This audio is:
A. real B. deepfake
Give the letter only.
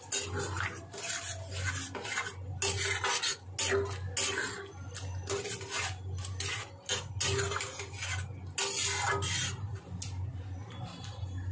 A